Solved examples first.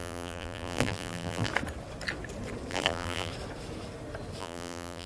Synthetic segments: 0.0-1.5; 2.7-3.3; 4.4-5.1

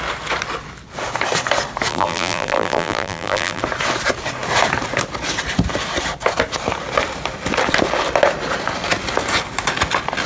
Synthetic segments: 1.9-3.6